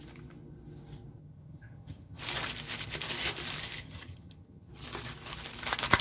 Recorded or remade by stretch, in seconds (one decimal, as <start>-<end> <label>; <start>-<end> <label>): 0.0-1.2 recorded; 1.2-2.2 remade; 2.2-3.8 recorded; 3.8-4.7 remade; 4.7-6.0 recorded

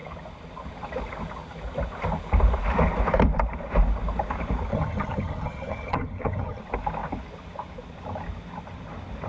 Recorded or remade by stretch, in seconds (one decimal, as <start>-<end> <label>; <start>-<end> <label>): 0.0-4.7 recorded; 4.7-6.6 remade; 6.6-9.3 recorded

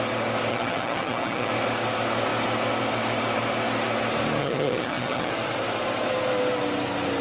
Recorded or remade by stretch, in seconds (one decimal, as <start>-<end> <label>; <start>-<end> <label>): 0.0-0.5 recorded; 0.5-1.5 remade; 1.5-4.4 recorded; 4.4-5.3 remade; 5.3-7.2 recorded

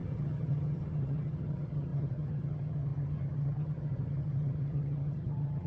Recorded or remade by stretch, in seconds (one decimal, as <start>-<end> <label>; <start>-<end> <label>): 0.0-5.7 remade

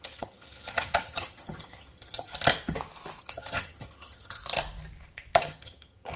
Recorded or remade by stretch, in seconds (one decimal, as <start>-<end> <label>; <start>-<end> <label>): 0.0-2.3 remade; 2.3-3.2 recorded; 3.2-4.4 remade; 4.4-5.4 recorded; 5.4-6.2 remade

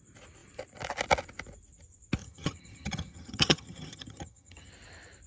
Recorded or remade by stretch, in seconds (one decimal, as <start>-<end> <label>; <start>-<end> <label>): 0.0-2.2 recorded; 2.2-4.7 remade; 4.7-5.3 recorded

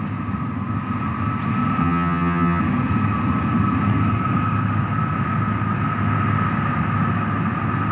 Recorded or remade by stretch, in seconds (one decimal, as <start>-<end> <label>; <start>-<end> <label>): 0.0-1.8 recorded; 1.8-2.6 remade; 2.6-7.9 recorded